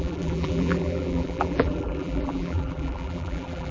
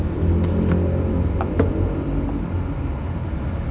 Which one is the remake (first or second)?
first